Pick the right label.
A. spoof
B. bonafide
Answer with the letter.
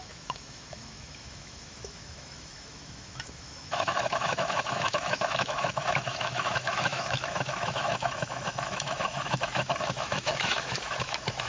A